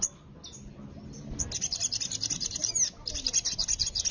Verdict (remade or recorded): recorded